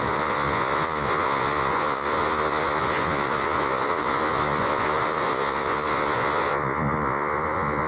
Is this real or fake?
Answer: fake